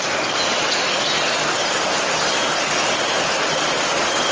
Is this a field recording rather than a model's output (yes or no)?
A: yes